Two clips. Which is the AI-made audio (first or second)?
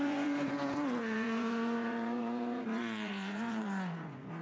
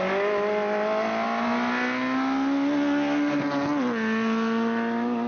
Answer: first